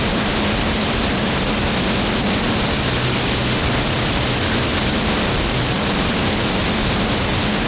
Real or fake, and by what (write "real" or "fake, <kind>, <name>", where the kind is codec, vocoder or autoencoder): real